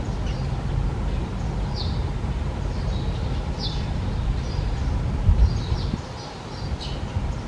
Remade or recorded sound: recorded